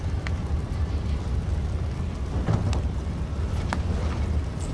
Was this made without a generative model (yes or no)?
yes